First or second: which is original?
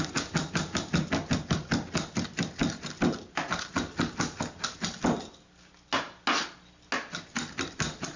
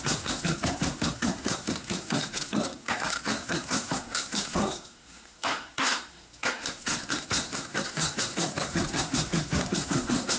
first